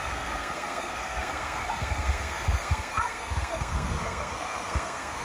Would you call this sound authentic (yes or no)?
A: no